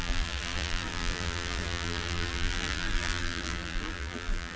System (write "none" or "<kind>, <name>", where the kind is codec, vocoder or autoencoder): vocoder, BigVGAN v2